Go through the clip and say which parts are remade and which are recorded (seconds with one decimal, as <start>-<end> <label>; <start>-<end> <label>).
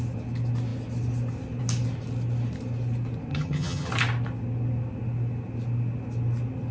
0.0-3.3 recorded; 3.3-3.9 remade; 3.9-6.7 recorded